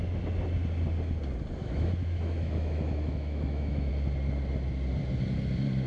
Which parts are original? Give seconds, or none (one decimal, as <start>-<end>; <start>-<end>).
0.0-1.6; 3.9-5.9